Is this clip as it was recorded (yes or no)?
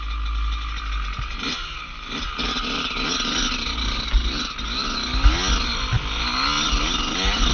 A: yes